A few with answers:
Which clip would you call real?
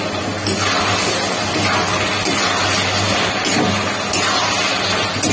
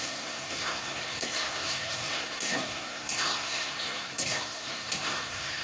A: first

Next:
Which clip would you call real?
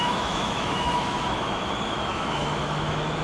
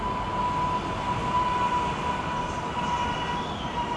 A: second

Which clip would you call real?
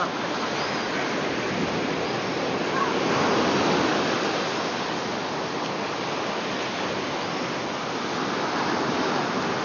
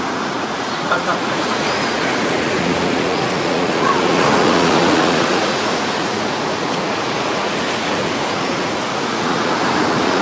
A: first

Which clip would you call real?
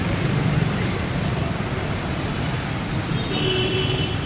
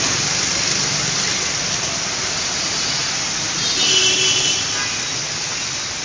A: second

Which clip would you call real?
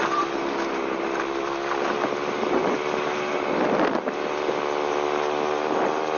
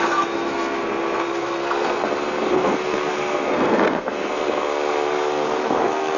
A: first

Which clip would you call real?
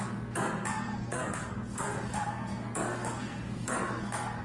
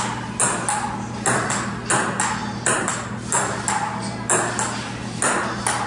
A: second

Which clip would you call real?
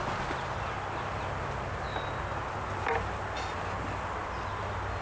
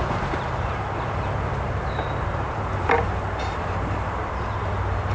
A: first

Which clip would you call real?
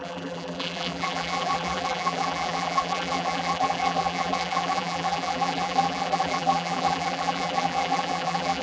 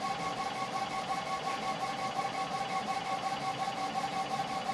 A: second